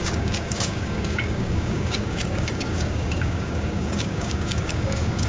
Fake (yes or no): yes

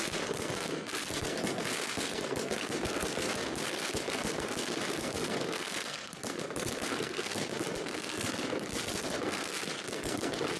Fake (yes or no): yes